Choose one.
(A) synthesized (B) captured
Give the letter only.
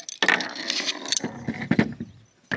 B